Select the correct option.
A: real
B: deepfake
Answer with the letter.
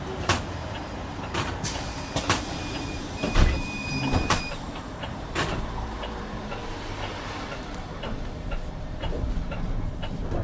B